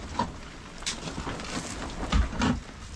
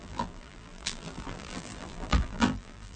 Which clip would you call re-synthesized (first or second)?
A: second